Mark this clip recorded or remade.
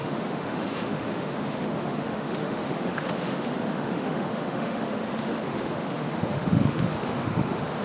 remade